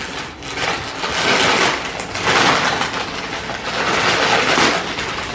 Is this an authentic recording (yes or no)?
yes